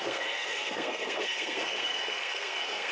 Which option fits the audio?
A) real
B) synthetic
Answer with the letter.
B